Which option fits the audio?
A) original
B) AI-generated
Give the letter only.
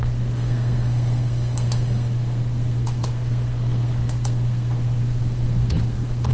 B